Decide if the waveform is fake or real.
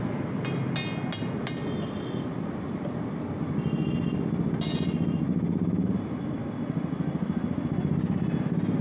real